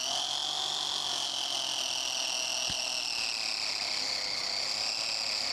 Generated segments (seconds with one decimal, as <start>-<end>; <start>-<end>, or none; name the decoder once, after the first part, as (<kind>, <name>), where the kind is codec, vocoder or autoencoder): none